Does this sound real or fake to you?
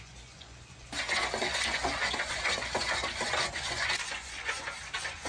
fake